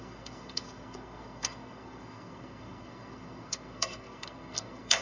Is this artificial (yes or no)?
yes